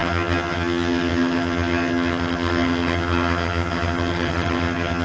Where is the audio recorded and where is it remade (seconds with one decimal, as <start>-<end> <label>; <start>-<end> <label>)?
0.0-5.0 remade